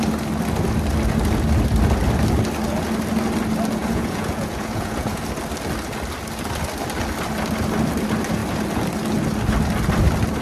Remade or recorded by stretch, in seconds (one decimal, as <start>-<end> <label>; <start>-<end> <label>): 0.0-3.8 recorded; 3.8-5.2 remade; 5.2-10.4 recorded